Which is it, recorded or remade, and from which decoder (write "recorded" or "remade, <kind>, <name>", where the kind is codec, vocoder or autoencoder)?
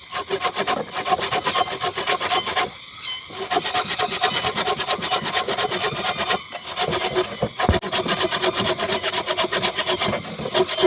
recorded